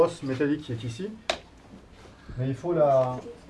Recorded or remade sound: recorded